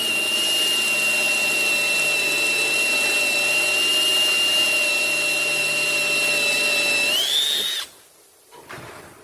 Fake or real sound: real